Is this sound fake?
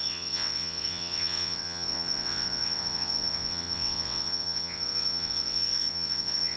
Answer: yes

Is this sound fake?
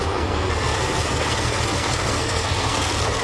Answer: yes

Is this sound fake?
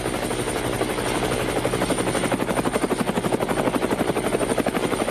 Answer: no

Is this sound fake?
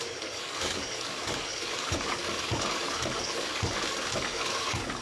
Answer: yes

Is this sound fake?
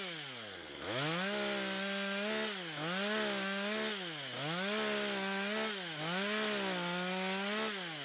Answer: no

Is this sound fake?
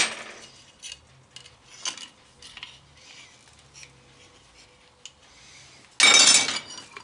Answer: no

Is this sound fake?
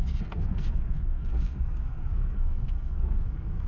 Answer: yes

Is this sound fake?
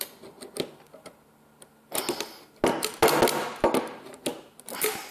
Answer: no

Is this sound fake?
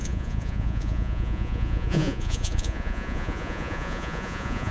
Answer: yes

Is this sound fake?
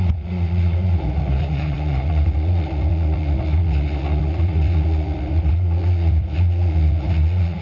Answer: yes